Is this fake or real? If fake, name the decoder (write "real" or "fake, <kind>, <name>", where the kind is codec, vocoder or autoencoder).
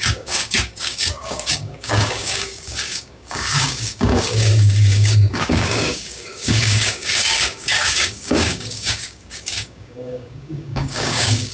fake, codec, DAC